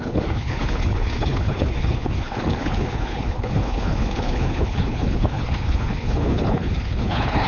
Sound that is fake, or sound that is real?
fake